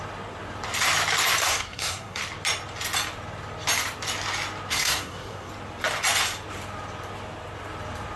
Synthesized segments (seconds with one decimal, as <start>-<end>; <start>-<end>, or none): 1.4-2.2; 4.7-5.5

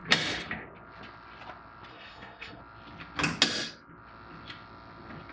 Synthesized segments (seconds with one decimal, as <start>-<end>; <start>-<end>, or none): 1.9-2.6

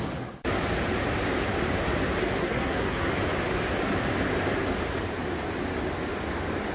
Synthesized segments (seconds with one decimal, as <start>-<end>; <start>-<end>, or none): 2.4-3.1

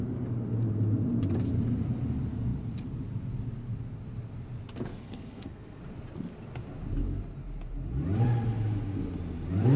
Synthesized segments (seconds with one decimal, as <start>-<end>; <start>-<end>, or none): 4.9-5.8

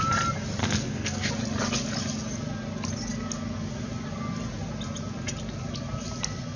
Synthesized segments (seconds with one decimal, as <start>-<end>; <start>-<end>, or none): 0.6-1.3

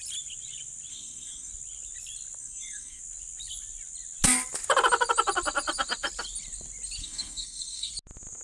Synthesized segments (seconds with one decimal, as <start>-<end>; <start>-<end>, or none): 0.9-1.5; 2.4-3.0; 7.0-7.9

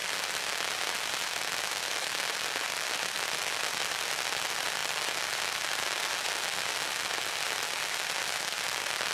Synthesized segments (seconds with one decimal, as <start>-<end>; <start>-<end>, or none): none